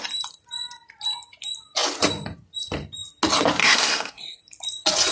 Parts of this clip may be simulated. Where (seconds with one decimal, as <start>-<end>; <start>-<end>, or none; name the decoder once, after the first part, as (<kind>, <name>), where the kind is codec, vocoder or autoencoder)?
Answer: 3.6-4.4 (codec, SNAC)